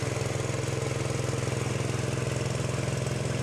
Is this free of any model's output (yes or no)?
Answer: yes